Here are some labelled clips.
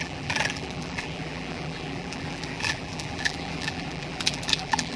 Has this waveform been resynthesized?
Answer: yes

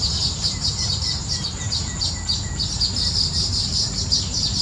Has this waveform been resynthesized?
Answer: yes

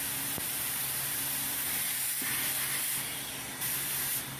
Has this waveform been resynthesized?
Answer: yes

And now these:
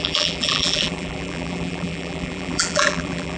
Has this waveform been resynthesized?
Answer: yes